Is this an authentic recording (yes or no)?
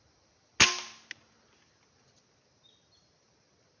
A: yes